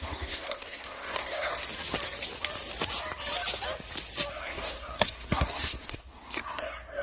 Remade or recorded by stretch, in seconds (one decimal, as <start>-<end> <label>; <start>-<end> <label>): 0.0-1.5 remade; 1.5-4.3 recorded; 4.3-7.0 remade